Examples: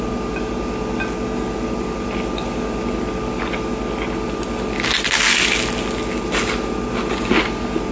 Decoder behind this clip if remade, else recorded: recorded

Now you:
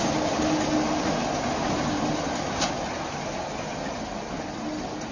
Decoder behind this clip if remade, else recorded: recorded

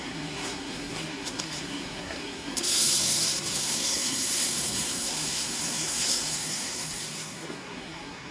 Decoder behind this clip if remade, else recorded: remade, codec, SNAC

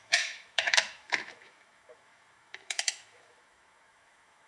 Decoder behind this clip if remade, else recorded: remade, autoencoder, DAC-VAE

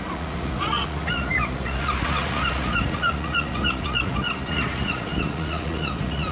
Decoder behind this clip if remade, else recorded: remade, vocoder, Vocos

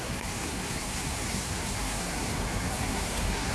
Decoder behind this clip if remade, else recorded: remade, codec, SNAC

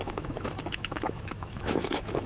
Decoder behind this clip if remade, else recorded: remade, autoencoder, DAC-VAE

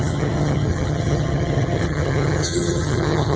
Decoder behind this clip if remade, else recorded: remade, vocoder, HiFi-GAN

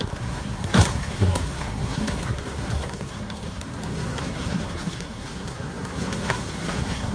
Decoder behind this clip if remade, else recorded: remade, codec, SNAC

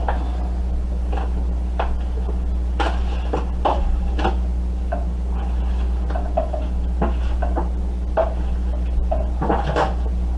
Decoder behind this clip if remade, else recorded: recorded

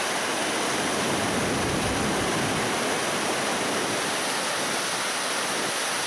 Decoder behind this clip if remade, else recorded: recorded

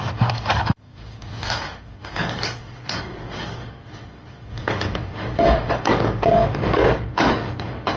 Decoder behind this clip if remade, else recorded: remade, codec, DAC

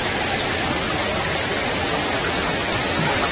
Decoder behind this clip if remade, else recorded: recorded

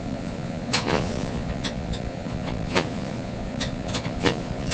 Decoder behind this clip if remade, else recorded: remade, vocoder, Vocos